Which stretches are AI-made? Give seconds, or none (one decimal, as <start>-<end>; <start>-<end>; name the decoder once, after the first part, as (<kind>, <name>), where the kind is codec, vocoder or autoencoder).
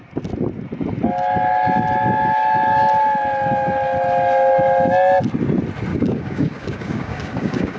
5.9-7.8 (codec, DAC)